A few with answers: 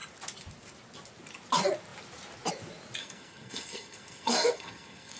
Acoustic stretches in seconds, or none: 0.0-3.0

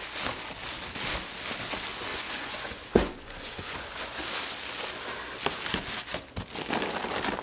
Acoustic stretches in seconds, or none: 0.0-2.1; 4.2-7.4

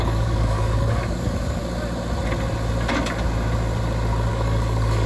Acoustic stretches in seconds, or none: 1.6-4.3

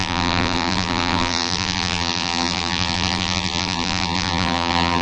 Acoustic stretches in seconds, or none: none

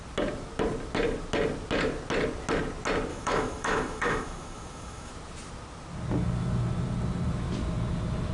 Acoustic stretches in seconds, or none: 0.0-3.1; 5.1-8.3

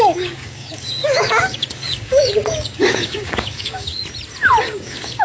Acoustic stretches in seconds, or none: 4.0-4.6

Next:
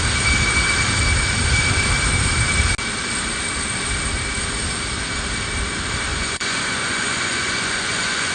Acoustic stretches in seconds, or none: 0.0-6.1